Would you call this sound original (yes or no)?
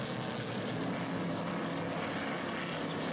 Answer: yes